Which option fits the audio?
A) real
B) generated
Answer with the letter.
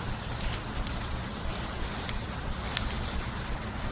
A